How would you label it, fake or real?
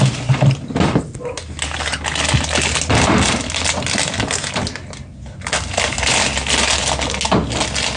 real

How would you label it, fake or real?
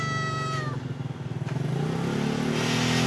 real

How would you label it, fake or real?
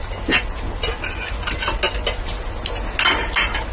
real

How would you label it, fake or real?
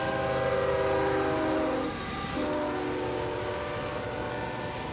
real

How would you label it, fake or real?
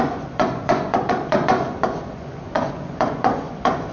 fake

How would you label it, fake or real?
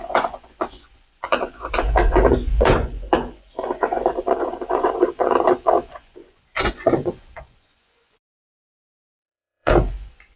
fake